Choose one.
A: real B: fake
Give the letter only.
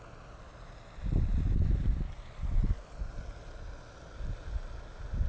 A